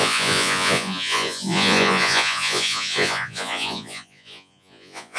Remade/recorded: remade